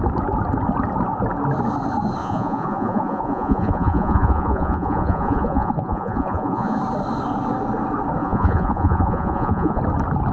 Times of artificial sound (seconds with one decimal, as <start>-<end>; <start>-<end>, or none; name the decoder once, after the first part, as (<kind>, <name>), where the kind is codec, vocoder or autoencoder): 2.2-6.8 (vocoder, Vocos); 8.2-9.8